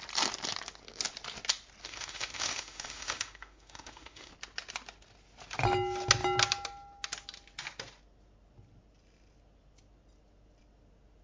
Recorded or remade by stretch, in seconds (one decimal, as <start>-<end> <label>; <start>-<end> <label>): 0.0-1.8 recorded; 1.8-4.3 remade; 4.3-11.2 recorded